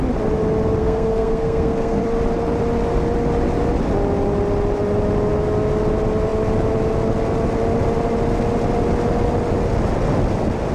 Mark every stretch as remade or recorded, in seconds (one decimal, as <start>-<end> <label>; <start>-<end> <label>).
0.0-0.8 recorded; 0.8-2.0 remade; 2.0-10.7 recorded